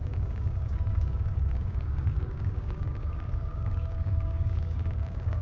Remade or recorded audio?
remade